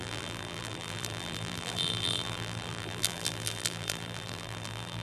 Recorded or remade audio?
remade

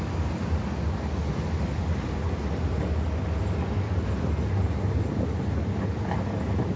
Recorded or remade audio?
recorded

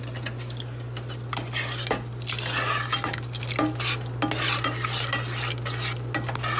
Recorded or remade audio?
recorded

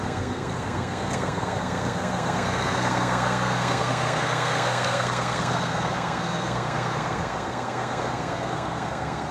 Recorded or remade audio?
remade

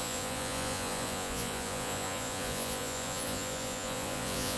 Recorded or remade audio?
remade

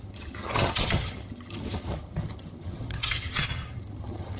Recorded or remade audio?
remade